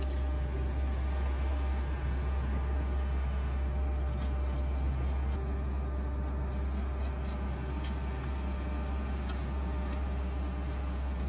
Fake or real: real